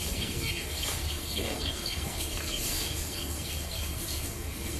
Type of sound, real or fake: fake